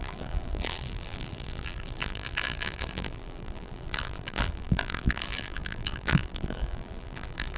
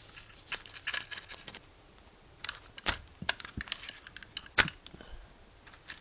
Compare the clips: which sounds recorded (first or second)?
second